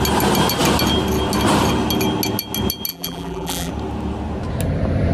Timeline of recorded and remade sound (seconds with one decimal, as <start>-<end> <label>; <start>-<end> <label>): 0.0-2.9 recorded; 2.9-3.7 remade; 3.7-5.1 recorded